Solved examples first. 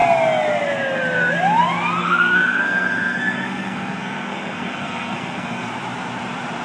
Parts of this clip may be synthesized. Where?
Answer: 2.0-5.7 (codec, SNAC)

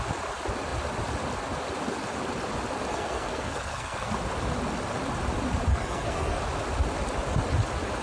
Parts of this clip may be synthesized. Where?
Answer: 2.9-4.1 (codec, SNAC); 5.7-6.4